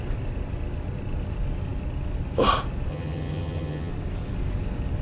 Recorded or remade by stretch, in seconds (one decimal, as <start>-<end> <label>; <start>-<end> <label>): 0.0-2.9 recorded; 2.9-3.9 remade; 3.9-5.0 recorded